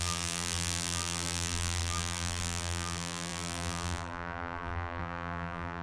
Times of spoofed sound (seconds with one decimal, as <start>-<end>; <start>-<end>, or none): 0.0-5.8